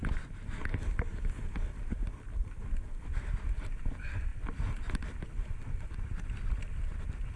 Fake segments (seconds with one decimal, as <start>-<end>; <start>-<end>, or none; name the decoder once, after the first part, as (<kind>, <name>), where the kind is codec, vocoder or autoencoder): none